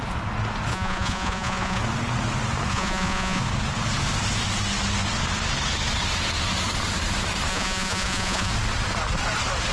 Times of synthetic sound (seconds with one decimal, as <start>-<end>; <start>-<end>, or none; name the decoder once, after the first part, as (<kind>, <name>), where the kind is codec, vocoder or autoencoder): 0.7-1.8 (vocoder, Vocos); 2.7-3.4; 7.5-8.5